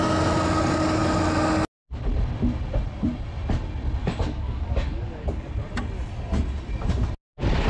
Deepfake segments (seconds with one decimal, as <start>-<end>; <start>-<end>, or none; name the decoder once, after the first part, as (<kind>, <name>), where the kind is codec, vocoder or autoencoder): 4.0-5.5 (codec, DAC)